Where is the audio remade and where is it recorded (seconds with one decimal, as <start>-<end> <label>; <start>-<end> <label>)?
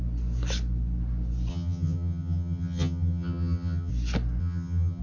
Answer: 0.0-1.5 recorded; 1.5-3.9 remade; 3.9-4.4 recorded; 4.4-5.0 remade